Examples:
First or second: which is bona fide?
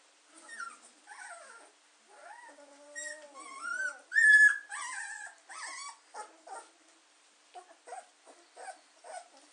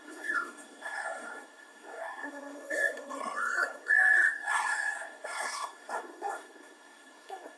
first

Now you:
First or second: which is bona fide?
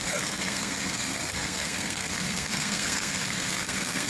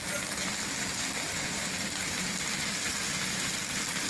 second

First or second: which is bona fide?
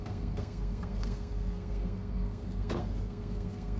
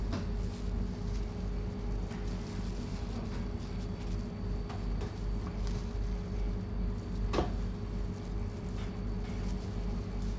second